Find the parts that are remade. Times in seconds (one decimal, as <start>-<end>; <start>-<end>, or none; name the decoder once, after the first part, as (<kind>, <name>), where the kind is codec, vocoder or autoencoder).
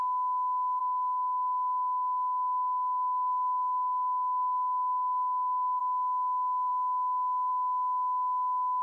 0.8-5.8 (codec, SNAC)